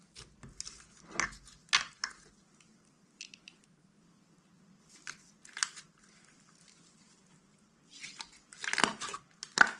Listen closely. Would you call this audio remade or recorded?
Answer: recorded